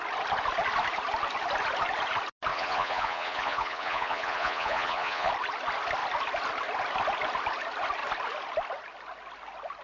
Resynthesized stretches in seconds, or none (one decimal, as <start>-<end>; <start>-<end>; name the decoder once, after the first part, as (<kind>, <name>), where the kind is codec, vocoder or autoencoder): 2.5-5.3 (vocoder, Vocos)